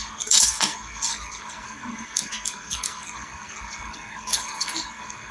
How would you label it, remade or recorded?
remade